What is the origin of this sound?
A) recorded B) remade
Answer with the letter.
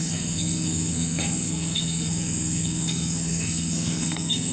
B